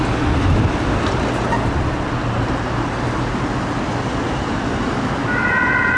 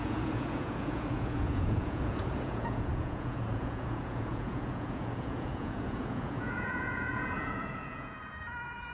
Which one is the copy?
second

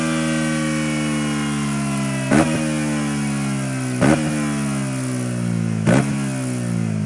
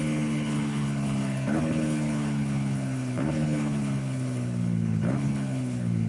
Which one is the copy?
second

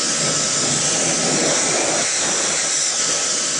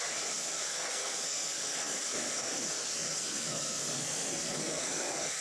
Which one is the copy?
second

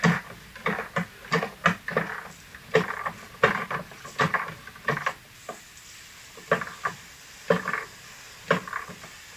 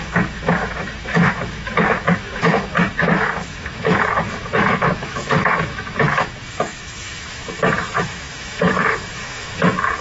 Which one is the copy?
second